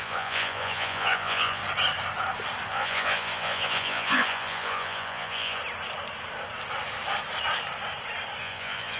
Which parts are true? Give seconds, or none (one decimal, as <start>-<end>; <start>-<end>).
1.6-2.7; 5.6-8.4